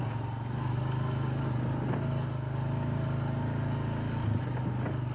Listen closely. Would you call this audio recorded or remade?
recorded